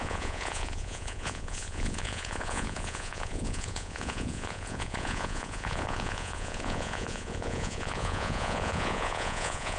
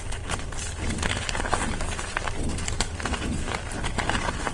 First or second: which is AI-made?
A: first